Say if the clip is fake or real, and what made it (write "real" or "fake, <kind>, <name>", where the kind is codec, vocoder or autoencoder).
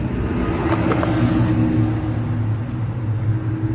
real